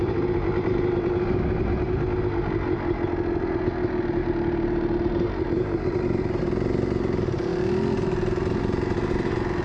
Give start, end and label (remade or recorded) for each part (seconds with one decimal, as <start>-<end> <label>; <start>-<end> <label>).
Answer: 0.0-4.2 recorded; 4.2-6.0 remade; 6.0-9.6 recorded